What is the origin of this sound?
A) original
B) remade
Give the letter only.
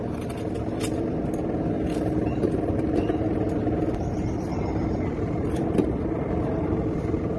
B